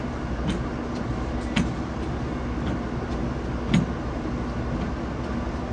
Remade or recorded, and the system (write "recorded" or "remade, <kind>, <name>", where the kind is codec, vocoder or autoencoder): recorded